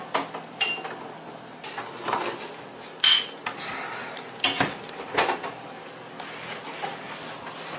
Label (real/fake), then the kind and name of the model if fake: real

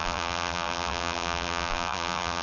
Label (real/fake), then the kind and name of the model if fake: fake, vocoder, BigVGAN v2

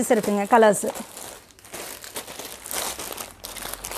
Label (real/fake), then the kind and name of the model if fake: real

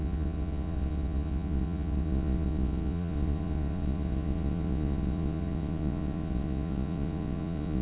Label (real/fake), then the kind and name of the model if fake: fake, vocoder, Vocos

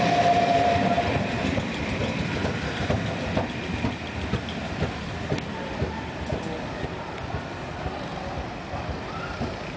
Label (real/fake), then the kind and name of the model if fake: real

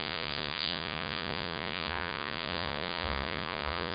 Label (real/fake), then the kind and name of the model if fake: fake, vocoder, Vocos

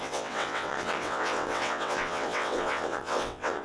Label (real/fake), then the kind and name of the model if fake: fake, vocoder, WaveNeXt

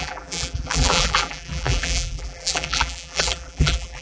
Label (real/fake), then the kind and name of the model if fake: fake, vocoder, BigVGAN v2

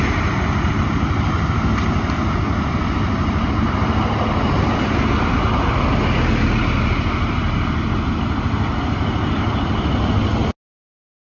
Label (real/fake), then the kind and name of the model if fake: real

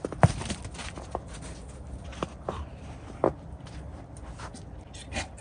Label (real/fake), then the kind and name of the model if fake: real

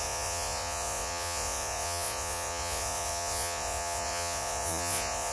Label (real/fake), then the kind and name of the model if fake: fake, vocoder, Vocos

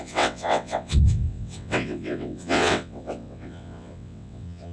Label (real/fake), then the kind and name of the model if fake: fake, vocoder, WaveNeXt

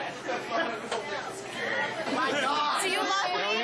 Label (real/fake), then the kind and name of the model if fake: real